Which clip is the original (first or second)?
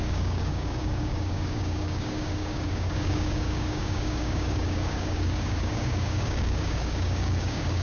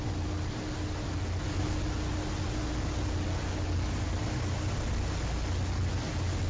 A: second